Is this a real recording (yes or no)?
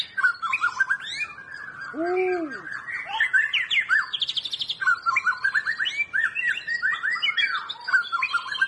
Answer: yes